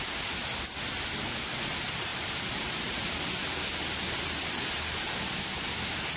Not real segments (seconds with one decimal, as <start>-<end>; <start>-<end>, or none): 2.1-3.0